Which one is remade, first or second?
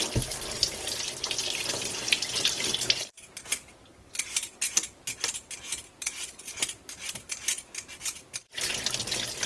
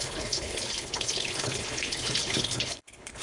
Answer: second